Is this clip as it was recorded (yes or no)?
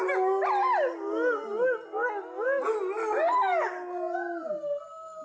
yes